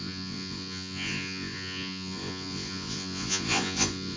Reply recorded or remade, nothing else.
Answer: remade